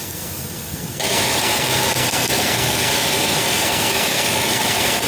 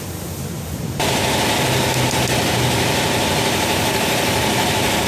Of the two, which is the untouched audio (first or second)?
second